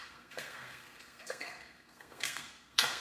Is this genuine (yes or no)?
no